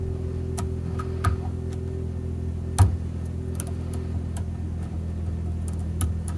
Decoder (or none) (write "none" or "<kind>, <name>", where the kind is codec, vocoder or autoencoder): none